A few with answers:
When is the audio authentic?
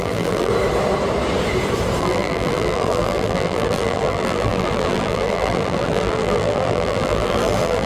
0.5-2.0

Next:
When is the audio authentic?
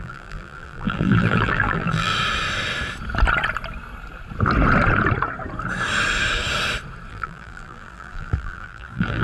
2.1-7.1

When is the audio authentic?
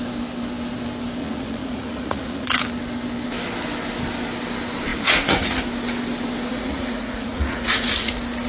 0.0-1.2; 2.6-4.9; 5.6-6.5; 8.1-8.5